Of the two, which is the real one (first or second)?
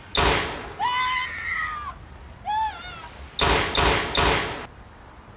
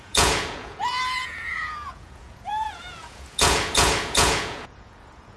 first